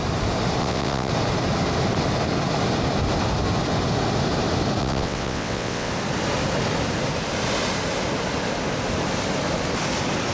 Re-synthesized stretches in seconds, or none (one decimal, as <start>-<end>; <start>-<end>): 0.6-1.1; 4.8-5.9